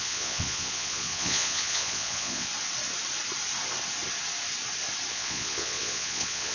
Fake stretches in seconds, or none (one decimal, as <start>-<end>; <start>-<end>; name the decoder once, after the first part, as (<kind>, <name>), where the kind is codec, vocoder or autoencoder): 0.0-2.5 (vocoder, Vocos); 5.1-6.5